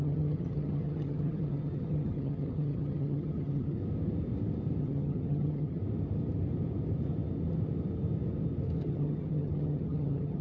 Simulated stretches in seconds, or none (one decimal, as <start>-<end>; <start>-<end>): 0.0-3.8; 4.8-5.8; 8.8-10.4